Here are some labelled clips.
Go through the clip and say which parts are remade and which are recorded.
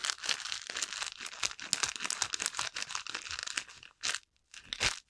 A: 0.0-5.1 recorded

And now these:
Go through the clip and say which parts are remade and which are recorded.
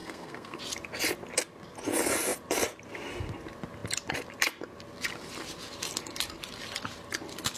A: 0.0-0.6 remade; 0.6-7.6 recorded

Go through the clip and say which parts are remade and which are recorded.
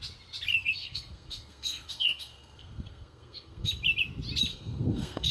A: 0.0-0.5 recorded; 0.5-3.7 remade; 3.7-4.5 recorded; 4.5-5.3 remade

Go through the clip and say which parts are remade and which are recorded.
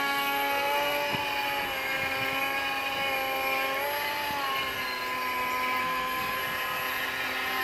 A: 0.0-1.2 remade; 1.2-5.8 recorded; 5.8-6.4 remade; 6.4-7.6 recorded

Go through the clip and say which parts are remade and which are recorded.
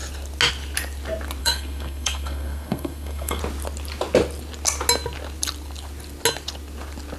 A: 0.0-1.4 recorded; 1.4-3.4 remade; 3.4-7.2 recorded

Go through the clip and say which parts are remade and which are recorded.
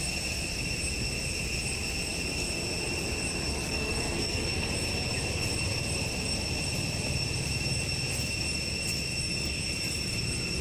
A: 0.0-3.5 recorded; 3.5-4.7 remade; 4.7-10.6 recorded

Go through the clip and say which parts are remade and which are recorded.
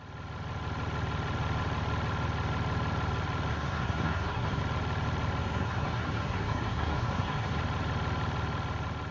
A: 0.0-3.5 recorded; 3.5-4.6 remade; 4.6-5.4 recorded; 5.4-7.6 remade; 7.6-9.1 recorded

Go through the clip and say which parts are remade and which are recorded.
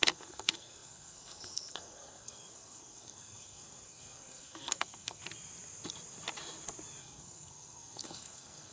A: 0.0-5.2 remade; 5.2-7.0 recorded; 7.0-8.7 remade